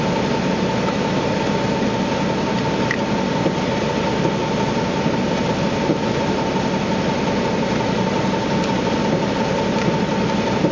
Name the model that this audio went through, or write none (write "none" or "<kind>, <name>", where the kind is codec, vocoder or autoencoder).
none